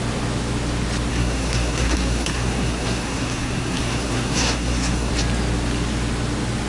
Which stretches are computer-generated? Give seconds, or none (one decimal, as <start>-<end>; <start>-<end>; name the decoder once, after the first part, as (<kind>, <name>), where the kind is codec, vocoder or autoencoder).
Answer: 1.1-5.1 (codec, SNAC)